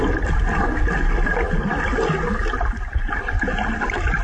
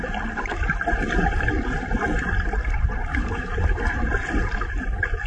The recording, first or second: first